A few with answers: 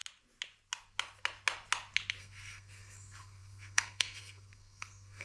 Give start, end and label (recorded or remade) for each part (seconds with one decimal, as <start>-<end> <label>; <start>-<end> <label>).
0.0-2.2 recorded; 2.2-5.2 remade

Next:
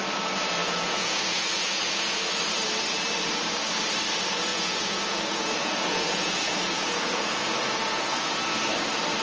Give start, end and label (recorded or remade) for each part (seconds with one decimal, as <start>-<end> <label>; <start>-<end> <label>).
0.0-0.6 recorded; 0.6-2.2 remade; 2.2-4.5 recorded; 4.5-8.3 remade; 8.3-9.2 recorded

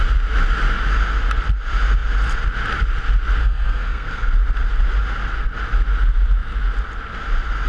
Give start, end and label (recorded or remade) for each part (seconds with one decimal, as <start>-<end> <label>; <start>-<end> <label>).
0.0-3.4 recorded; 3.4-4.3 remade; 4.3-7.7 recorded

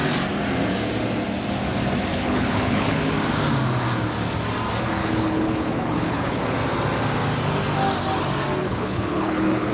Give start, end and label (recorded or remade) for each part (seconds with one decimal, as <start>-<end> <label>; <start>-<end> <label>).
0.0-2.1 recorded; 2.1-3.0 remade; 3.0-5.0 recorded; 5.0-6.4 remade; 6.4-8.6 recorded; 8.6-9.7 remade

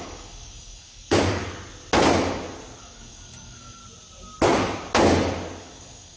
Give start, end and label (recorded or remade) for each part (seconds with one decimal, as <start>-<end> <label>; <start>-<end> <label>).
0.0-1.4 remade; 1.4-2.8 recorded; 2.8-3.8 remade; 3.8-5.6 recorded; 5.6-6.2 remade

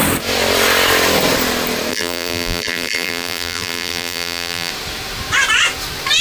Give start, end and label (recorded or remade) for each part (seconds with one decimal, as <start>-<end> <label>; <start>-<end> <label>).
0.0-1.9 recorded; 1.9-4.7 remade; 4.7-6.2 recorded